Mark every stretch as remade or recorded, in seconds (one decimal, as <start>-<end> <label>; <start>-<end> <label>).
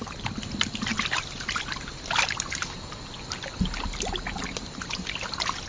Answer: 0.0-5.7 recorded